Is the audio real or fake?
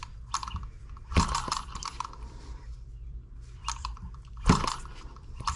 fake